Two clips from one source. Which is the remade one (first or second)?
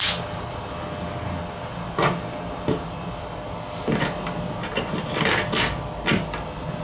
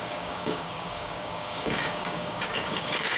second